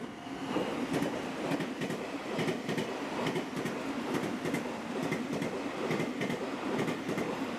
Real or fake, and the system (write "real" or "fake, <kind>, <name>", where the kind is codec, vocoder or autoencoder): real